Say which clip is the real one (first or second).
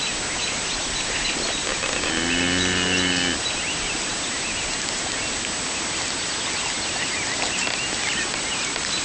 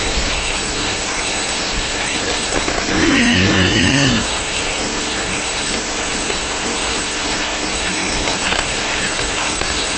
first